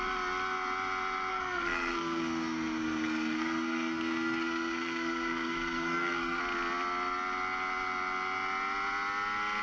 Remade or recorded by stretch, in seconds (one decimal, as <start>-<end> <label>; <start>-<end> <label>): 0.0-1.3 recorded; 1.3-6.4 remade; 6.4-9.6 recorded